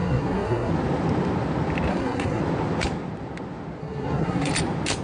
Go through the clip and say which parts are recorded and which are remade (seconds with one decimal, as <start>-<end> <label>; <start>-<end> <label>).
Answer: 0.0-0.7 remade; 0.7-1.9 recorded; 1.9-2.4 remade; 2.4-3.8 recorded; 3.8-4.5 remade; 4.5-5.0 recorded